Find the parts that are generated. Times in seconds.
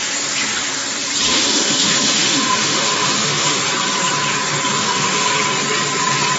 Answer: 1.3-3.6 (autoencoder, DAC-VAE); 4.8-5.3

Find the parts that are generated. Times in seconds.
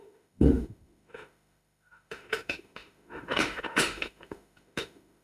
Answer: 0.0-5.2 (autoencoder, DAC-VAE)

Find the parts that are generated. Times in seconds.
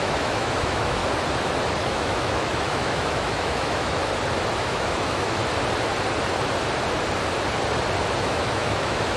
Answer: 0.0-1.0 (autoencoder, DAC-VAE); 1.8-4.0; 4.6-5.4; 8.2-9.2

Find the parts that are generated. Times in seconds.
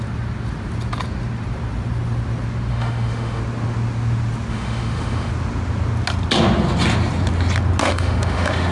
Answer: 2.7-3.4 (autoencoder, DAC-VAE); 4.5-5.3; 7.8-8.7